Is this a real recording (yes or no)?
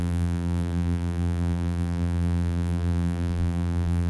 no